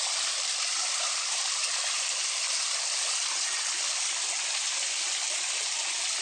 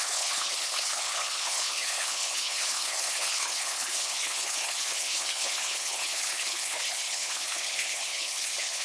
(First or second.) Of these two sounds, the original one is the first